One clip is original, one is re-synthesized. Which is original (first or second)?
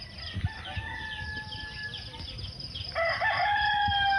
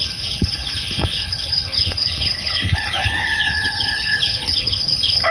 first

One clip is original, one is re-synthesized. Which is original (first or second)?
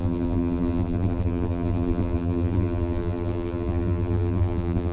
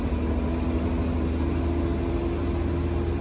second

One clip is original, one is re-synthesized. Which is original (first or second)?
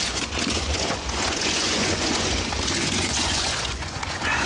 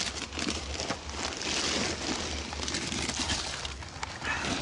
second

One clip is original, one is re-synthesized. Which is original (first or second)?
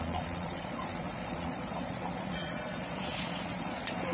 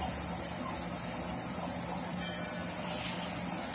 second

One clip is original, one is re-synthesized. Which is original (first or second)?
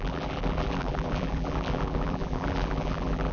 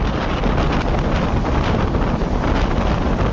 second